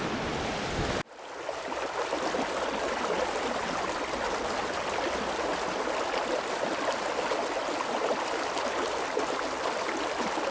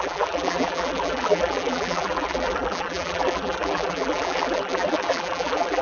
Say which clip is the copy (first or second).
second